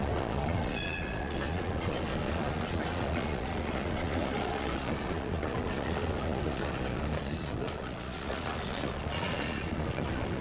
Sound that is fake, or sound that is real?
fake